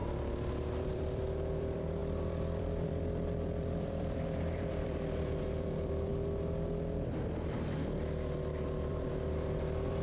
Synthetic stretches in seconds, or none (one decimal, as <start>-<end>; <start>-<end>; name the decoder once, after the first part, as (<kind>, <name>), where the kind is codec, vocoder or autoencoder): 0.8-6.1 (vocoder, BigVGAN v2); 8.9-10.0